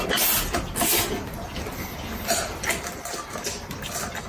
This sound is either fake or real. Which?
real